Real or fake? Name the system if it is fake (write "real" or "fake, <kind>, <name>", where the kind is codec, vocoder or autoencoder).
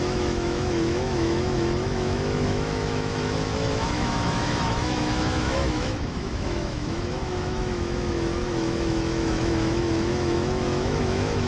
fake, autoencoder, DAC-VAE